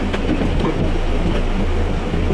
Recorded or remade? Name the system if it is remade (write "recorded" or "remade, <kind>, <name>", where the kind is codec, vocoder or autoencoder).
recorded